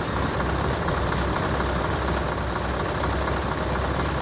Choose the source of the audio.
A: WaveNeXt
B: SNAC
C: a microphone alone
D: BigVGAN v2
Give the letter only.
C